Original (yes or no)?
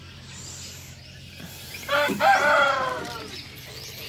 yes